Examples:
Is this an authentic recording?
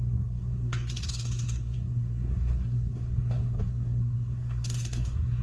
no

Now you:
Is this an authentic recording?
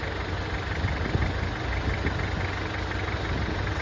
yes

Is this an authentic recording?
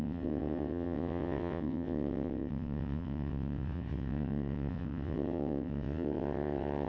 no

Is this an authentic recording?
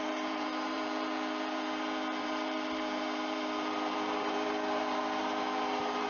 no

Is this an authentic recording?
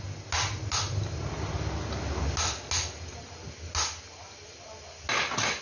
yes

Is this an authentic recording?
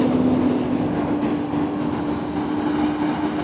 yes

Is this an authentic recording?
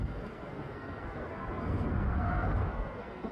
no